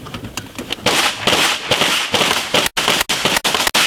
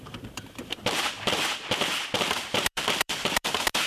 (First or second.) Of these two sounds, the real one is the first